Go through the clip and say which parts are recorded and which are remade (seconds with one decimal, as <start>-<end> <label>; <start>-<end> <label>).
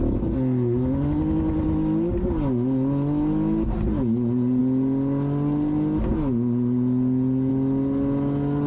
0.0-8.7 recorded